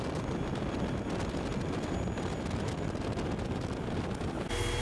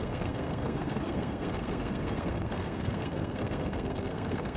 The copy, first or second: second